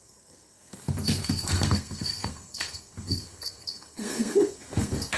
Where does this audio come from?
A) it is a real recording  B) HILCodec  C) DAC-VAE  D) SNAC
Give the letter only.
D